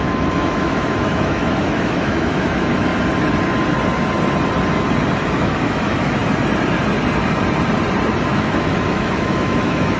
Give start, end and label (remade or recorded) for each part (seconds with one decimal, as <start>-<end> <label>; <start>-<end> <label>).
0.0-2.9 remade; 2.9-5.3 recorded; 5.3-6.2 remade; 6.2-8.3 recorded; 8.3-10.0 remade